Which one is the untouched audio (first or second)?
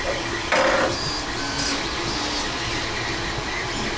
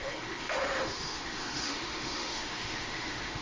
first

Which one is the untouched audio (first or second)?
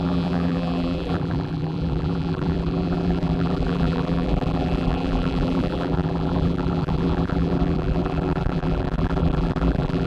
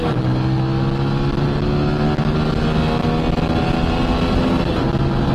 second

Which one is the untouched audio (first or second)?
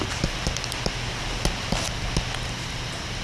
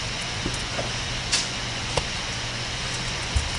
first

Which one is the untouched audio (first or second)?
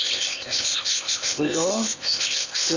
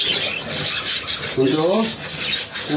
second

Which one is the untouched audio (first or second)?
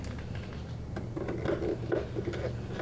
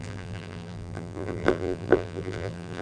first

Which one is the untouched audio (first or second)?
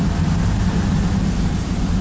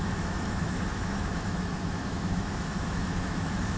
first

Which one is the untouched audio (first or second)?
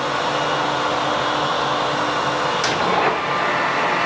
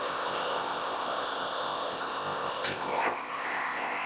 first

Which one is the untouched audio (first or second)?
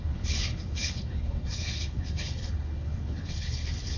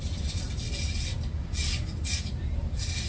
second